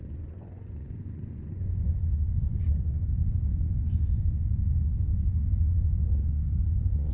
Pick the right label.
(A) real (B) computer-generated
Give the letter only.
B